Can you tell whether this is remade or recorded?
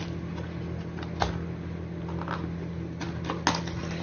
recorded